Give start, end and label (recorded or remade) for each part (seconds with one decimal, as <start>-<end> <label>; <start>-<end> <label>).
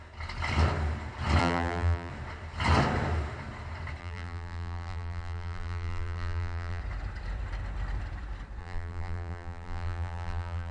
0.0-1.4 recorded; 1.4-2.1 remade; 2.1-4.0 recorded; 4.0-6.8 remade; 6.8-8.6 recorded; 8.6-10.7 remade